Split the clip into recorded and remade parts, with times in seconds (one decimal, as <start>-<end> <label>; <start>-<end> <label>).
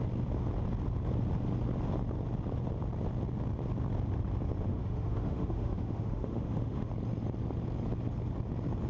0.0-4.7 recorded; 4.7-6.9 remade; 6.9-8.9 recorded